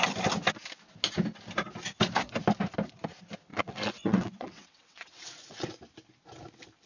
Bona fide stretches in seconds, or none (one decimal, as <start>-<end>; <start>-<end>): 0.0-3.5; 5.8-6.9